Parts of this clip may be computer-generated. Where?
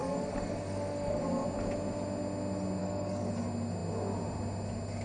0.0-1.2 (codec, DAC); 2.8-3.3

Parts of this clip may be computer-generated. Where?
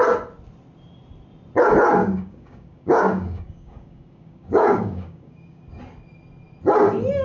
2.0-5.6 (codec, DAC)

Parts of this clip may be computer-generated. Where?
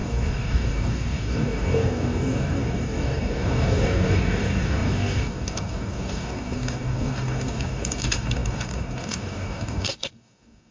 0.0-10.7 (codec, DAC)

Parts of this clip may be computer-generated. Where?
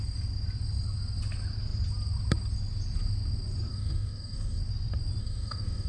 3.7-4.6 (codec, DAC); 5.2-5.9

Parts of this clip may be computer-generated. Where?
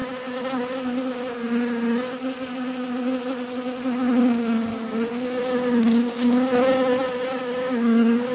4.2-4.7 (codec, DAC); 5.8-6.2; 7.4-8.3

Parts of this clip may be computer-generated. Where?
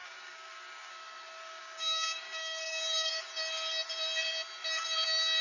0.0-0.9 (codec, DAC); 1.4-3.3